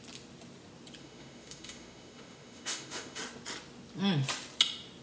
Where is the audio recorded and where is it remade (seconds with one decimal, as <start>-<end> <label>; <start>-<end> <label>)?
0.0-1.0 recorded; 1.0-3.2 remade; 3.2-5.0 recorded